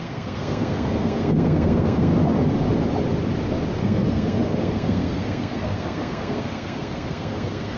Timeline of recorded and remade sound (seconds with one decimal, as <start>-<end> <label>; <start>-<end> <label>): 0.0-2.1 remade; 2.1-3.8 recorded; 3.8-7.8 remade